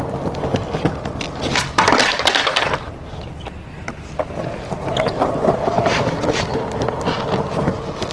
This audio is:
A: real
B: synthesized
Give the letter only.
A